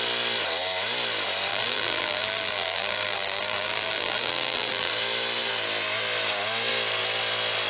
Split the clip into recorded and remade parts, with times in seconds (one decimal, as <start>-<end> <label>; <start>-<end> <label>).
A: 0.0-1.5 recorded; 1.5-4.9 remade; 4.9-7.7 recorded